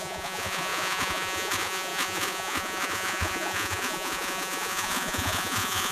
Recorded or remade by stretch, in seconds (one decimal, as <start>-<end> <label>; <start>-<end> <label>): 0.0-5.9 remade